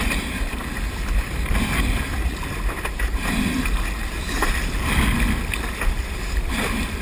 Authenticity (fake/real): real